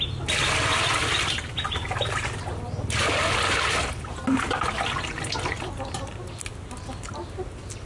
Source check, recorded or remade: recorded